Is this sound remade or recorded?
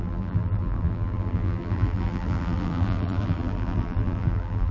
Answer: remade